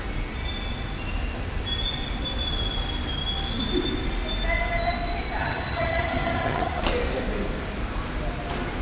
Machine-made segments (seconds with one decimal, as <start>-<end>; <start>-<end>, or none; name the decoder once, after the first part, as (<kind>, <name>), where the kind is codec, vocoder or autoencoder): 5.4-6.8 (vocoder, HiFi-GAN)